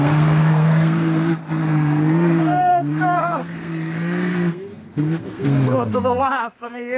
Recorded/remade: remade